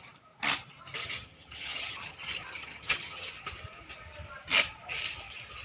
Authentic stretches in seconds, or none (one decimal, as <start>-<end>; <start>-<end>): 0.0-1.0; 3.3-5.6